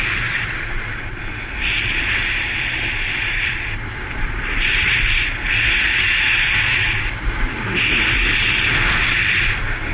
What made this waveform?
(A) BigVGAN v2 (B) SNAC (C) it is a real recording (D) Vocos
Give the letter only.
C